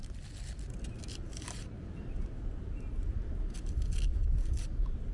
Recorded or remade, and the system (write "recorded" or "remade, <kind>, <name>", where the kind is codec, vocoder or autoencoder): recorded